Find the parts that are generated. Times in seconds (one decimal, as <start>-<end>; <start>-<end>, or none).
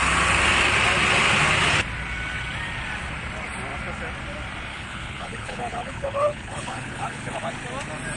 4.7-7.5